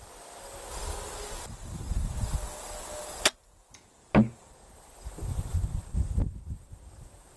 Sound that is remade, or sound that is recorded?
recorded